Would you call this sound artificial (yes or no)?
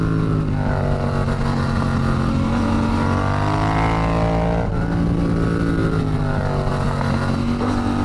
no